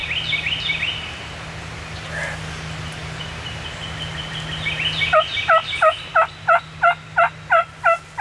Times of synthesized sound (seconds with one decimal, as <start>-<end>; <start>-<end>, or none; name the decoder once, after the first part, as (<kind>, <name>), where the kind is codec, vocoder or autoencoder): none